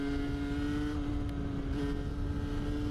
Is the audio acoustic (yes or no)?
yes